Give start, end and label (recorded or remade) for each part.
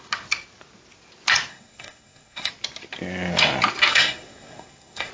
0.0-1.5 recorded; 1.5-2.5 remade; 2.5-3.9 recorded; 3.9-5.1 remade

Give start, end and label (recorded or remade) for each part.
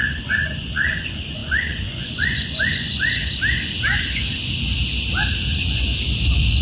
0.0-3.2 remade; 3.2-5.5 recorded; 5.5-5.9 remade; 5.9-6.6 recorded